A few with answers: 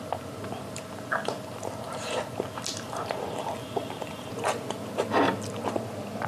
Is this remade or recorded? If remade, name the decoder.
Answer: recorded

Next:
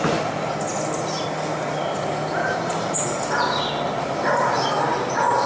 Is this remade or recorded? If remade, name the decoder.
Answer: recorded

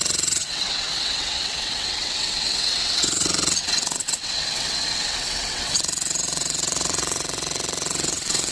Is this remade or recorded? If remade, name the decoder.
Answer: remade, vocoder, WaveNeXt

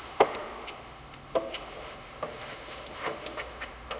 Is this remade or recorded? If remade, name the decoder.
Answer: remade, autoencoder, DAC-VAE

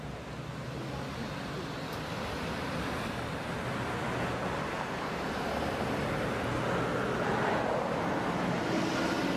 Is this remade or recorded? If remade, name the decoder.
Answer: recorded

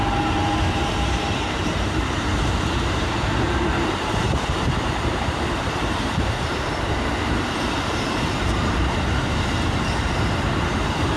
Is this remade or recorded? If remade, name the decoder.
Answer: remade, vocoder, BigVGAN v2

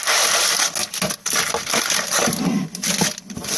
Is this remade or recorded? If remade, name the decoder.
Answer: recorded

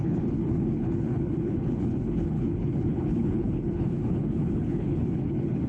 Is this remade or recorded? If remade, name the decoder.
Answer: remade, codec, HILCodec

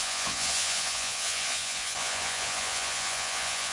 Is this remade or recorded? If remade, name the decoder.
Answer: remade, vocoder, Vocos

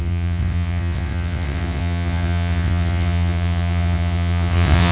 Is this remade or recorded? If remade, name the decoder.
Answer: remade, vocoder, WaveNeXt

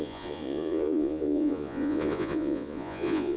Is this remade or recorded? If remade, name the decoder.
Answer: remade, vocoder, Vocos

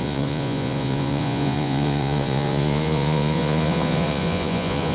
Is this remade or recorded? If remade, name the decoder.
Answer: remade, vocoder, Vocos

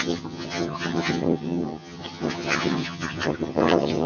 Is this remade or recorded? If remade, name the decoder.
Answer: remade, vocoder, HiFi-GAN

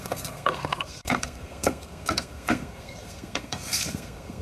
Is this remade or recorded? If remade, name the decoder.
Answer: remade, codec, SNAC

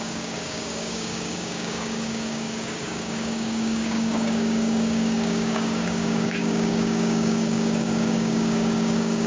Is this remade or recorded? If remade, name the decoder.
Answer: remade, codec, DAC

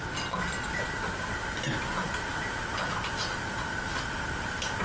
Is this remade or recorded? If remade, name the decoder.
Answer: recorded